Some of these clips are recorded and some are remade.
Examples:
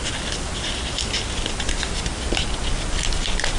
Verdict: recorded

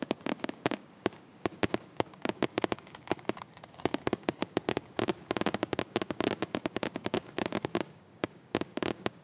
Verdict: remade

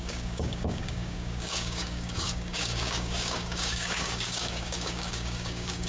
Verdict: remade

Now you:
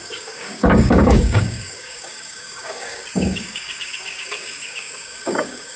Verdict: remade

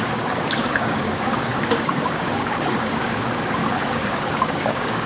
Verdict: remade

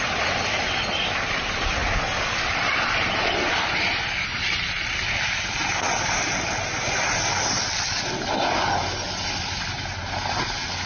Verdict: recorded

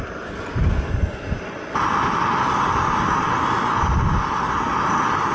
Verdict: recorded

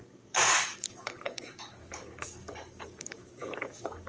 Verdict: remade